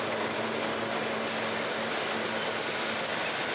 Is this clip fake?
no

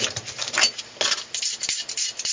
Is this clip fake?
no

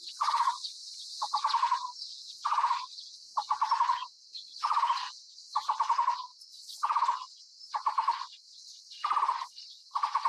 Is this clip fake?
no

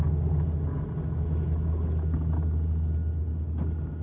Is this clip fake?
no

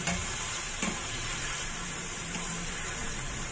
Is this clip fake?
yes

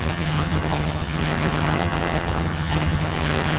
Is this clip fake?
yes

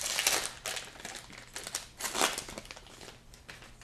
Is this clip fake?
no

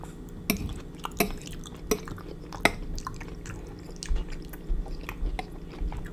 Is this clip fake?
no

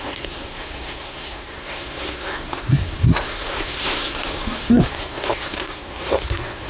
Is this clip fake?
yes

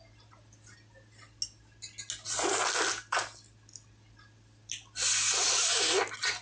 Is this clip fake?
no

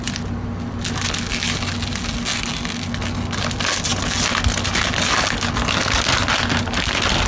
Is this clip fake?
no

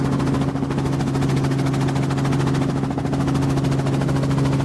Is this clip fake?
no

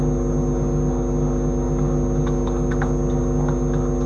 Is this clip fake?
no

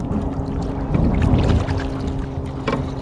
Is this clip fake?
no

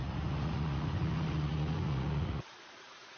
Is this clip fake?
yes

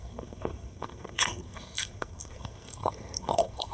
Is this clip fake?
yes